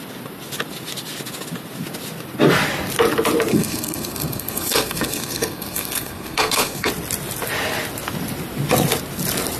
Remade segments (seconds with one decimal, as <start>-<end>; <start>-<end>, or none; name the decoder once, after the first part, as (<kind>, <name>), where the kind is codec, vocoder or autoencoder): 3.5-6.9 (codec, SNAC)